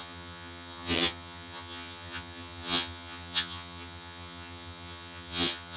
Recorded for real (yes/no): no